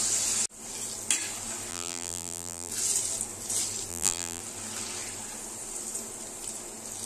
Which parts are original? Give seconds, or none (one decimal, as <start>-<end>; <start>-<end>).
0.0-1.7; 2.7-3.9; 4.4-7.1